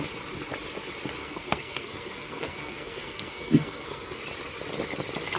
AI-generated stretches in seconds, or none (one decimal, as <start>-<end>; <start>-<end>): 1.2-4.2